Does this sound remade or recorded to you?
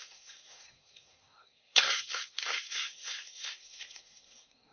remade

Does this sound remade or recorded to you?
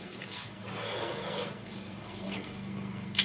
remade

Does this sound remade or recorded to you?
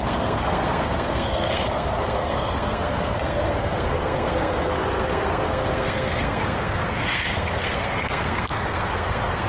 remade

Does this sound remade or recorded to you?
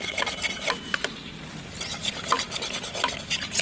recorded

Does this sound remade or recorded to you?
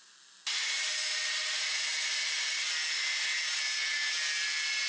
recorded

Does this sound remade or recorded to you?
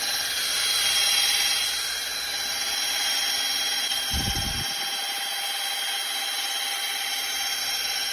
recorded